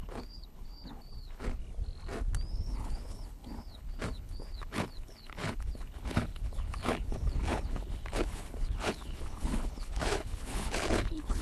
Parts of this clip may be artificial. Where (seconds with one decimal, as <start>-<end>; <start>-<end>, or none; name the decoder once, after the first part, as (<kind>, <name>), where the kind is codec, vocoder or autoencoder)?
0.0-1.6 (codec, HILCodec); 2.5-11.4